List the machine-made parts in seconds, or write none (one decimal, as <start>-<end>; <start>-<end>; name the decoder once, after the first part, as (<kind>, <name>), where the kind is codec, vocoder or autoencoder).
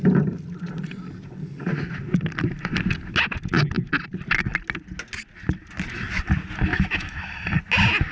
6.7-7.3 (autoencoder, DAC-VAE)